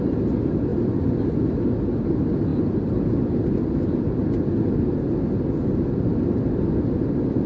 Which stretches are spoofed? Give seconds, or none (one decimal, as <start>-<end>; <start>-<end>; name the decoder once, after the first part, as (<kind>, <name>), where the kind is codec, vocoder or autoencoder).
none